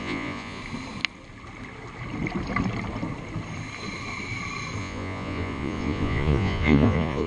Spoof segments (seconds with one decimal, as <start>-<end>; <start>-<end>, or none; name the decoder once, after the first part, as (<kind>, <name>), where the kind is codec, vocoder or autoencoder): 0.0-0.6 (vocoder, Vocos); 4.8-7.3